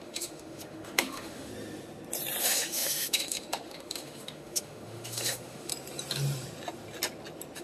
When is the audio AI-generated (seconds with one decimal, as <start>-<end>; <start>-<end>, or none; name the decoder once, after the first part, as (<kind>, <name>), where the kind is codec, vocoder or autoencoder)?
0.0-1.5 (autoencoder, DAC-VAE); 2.4-5.7

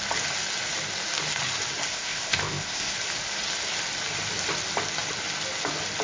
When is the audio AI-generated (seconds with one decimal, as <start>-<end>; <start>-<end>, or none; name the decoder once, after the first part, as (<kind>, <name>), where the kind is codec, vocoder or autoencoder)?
1.9-2.9 (codec, ZipCodec)

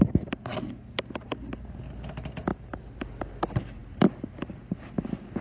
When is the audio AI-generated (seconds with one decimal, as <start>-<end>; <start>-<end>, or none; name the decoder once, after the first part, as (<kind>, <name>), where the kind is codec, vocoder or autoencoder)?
none